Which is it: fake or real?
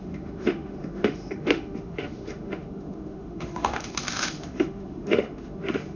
fake